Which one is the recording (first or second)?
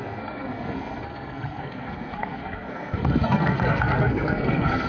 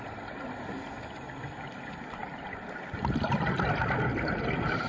second